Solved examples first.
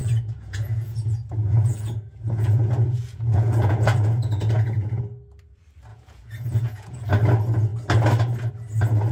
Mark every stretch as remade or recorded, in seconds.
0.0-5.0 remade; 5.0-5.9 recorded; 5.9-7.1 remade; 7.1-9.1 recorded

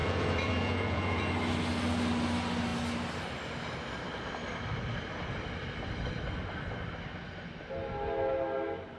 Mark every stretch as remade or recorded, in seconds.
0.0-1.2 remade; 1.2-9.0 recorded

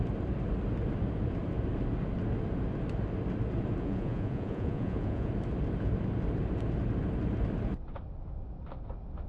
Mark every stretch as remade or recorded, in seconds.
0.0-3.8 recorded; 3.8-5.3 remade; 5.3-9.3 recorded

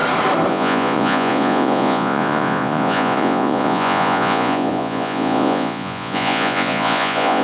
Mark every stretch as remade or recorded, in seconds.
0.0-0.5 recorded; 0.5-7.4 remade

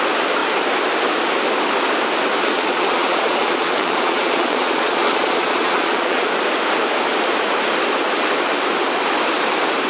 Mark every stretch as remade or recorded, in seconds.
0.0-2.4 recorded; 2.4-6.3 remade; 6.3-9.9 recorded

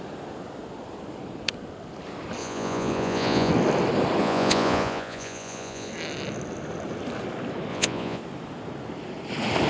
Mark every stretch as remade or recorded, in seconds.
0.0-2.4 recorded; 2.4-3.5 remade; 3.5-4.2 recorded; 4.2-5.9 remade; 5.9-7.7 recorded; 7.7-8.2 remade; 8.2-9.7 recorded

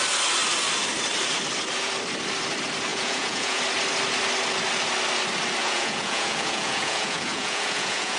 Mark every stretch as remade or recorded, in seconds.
0.0-2.9 recorded; 2.9-3.6 remade; 3.6-5.6 recorded; 5.6-8.2 remade

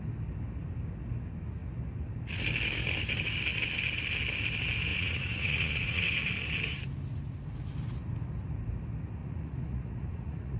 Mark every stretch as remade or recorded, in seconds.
0.0-4.9 recorded; 4.9-6.2 remade; 6.2-9.2 recorded; 9.2-10.6 remade